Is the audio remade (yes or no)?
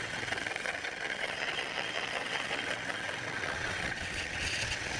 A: yes